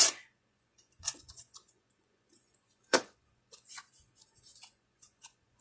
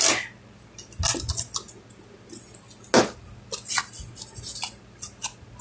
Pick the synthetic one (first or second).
first